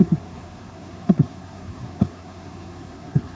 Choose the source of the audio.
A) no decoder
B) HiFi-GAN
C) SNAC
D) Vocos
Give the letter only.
C